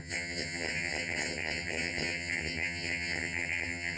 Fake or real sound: fake